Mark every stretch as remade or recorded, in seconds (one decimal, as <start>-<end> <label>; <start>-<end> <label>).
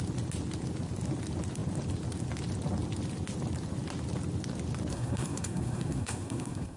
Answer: 0.0-4.9 recorded; 4.9-6.8 remade